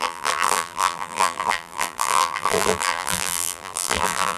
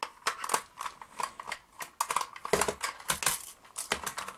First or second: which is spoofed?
first